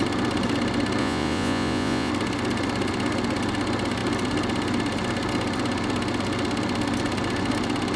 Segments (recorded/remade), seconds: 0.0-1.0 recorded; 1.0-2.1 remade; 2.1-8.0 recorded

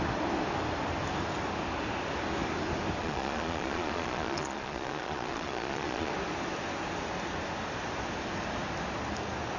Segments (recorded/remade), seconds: 0.0-3.0 recorded; 3.0-6.1 remade; 6.1-9.6 recorded

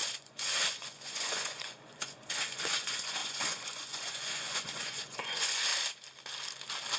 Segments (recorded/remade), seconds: 0.0-5.7 remade; 5.7-7.0 recorded

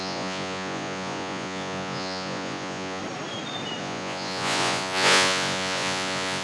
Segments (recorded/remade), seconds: 0.0-3.0 remade; 3.0-3.8 recorded; 3.8-6.4 remade